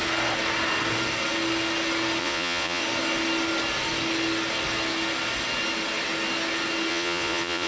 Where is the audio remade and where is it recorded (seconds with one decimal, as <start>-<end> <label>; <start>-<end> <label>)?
0.0-2.2 recorded; 2.2-2.8 remade; 2.8-6.9 recorded; 6.9-7.7 remade